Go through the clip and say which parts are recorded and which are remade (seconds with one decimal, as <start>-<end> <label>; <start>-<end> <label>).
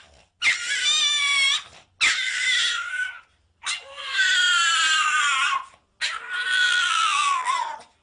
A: 0.0-6.5 recorded; 6.5-7.5 remade; 7.5-8.0 recorded